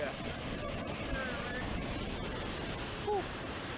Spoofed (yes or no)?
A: no